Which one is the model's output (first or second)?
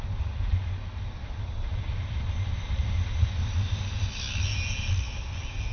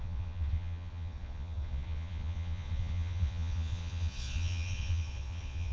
second